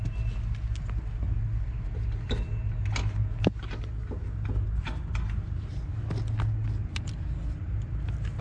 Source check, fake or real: real